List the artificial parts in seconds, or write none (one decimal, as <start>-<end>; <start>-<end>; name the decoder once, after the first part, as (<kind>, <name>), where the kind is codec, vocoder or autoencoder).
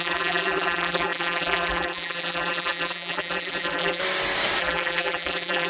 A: 0.0-4.0 (vocoder, BigVGAN v2); 4.6-5.7